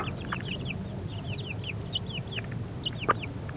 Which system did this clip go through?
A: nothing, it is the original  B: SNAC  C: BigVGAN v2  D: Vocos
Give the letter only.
A